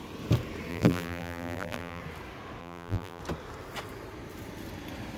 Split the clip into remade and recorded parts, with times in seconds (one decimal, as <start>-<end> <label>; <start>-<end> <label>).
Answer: 0.0-0.7 recorded; 0.7-2.0 remade; 2.0-2.6 recorded; 2.6-3.2 remade; 3.2-5.2 recorded